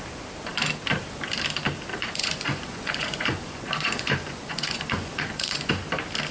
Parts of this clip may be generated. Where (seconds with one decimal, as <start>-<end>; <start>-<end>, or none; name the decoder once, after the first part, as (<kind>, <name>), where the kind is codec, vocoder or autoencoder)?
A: 1.9-5.7 (vocoder, Vocos)